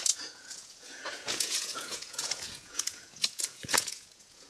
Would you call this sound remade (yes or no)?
yes